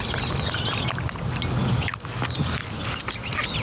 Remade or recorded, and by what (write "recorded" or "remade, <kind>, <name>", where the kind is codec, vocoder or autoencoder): recorded